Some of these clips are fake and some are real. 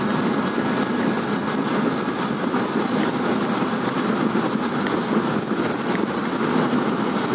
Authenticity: real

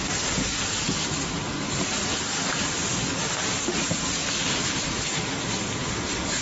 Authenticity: real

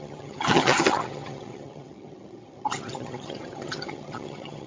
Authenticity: fake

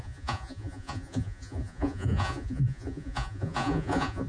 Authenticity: fake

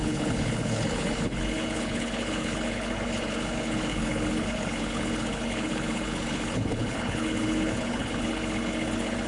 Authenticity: fake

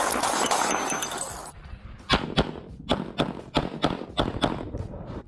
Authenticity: real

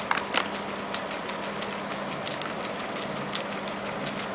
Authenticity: real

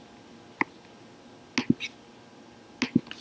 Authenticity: real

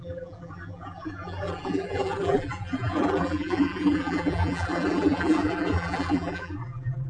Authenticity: fake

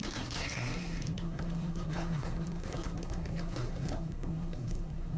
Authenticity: fake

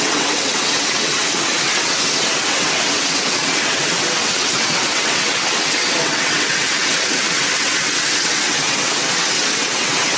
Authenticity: fake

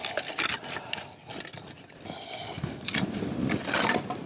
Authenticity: real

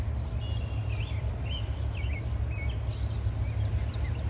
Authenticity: real